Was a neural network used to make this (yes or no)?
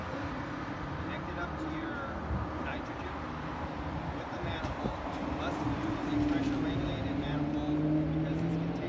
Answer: no